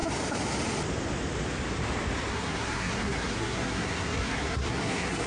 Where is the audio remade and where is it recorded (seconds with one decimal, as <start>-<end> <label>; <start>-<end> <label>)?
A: 0.0-2.3 recorded; 2.3-5.3 remade